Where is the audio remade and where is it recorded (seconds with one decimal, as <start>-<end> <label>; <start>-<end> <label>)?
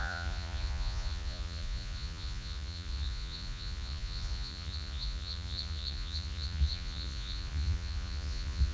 0.0-8.7 remade